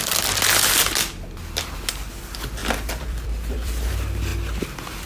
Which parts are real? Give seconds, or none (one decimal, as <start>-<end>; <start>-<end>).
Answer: 0.0-2.6; 3.9-5.1